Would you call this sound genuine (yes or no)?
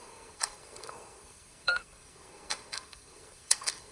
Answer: no